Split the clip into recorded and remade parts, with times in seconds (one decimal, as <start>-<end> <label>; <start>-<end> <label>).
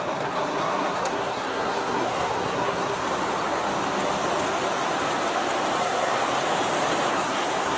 0.0-3.0 remade; 3.0-5.8 recorded; 5.8-6.2 remade; 6.2-7.1 recorded; 7.1-7.8 remade